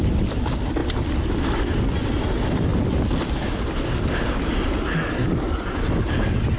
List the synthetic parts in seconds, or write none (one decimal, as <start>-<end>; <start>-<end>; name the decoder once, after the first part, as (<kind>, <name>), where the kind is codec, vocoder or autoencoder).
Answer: none